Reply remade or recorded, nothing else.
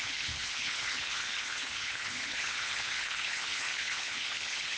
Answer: remade